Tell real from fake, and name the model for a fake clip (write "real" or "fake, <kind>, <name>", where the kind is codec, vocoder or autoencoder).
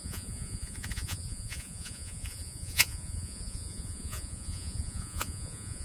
fake, vocoder, Vocos